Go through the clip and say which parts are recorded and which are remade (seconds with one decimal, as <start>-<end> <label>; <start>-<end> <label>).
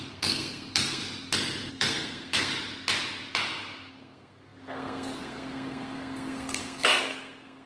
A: 0.0-1.0 remade; 1.0-1.7 recorded; 1.7-2.5 remade; 2.5-3.9 recorded; 3.9-7.7 remade